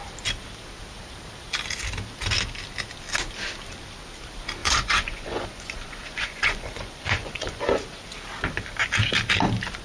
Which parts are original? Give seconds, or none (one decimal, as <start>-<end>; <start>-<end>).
0.0-4.6; 7.7-9.8